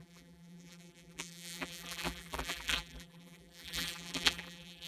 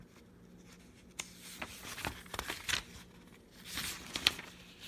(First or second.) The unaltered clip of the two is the second